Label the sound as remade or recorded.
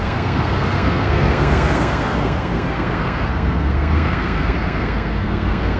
remade